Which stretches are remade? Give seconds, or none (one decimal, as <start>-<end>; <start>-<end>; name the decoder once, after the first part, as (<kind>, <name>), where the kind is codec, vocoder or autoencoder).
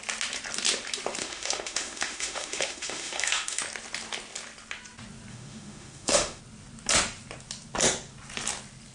1.2-3.6 (autoencoder, DAC-VAE); 5.3-6.4